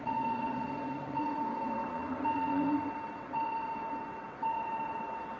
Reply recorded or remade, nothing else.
remade